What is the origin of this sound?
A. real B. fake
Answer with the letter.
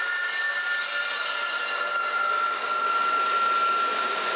A